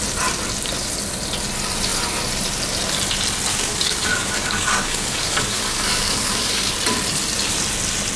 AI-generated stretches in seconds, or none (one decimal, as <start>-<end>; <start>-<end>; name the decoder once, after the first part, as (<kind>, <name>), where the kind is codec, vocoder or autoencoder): 3.5-6.7 (codec, DAC)